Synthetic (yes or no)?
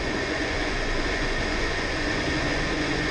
yes